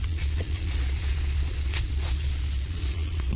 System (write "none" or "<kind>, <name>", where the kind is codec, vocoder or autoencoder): vocoder, Vocos